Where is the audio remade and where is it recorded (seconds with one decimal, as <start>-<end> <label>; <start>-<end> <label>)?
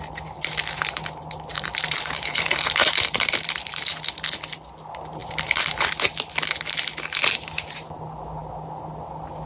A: 0.0-1.5 recorded; 1.5-4.0 remade; 4.0-5.2 recorded; 5.2-5.9 remade; 5.9-9.5 recorded